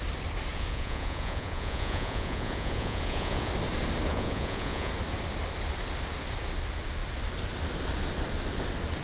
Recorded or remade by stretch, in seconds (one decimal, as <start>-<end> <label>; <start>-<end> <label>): 0.0-0.5 recorded; 0.5-3.5 remade; 3.5-4.1 recorded; 4.1-4.9 remade; 4.9-9.0 recorded